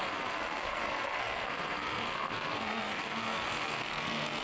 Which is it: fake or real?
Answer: fake